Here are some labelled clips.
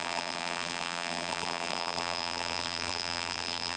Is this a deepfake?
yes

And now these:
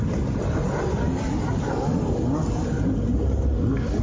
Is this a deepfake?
no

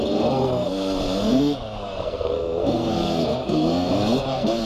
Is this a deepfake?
yes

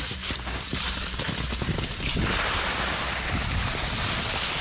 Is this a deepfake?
no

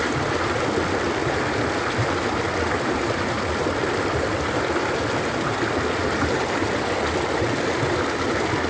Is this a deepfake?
no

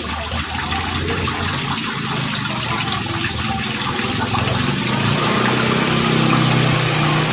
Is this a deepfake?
no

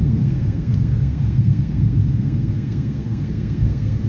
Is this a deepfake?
yes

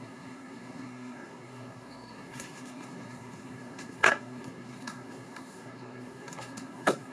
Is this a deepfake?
yes